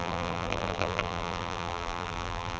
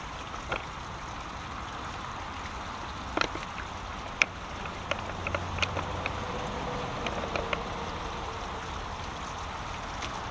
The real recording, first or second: second